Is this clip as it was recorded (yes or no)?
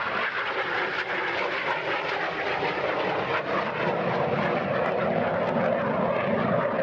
yes